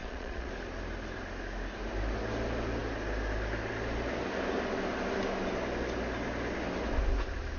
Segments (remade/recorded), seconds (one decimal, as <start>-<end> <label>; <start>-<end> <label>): 0.0-0.5 remade; 0.5-7.6 recorded